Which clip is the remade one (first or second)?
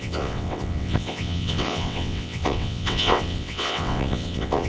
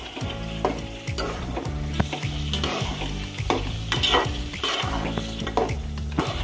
first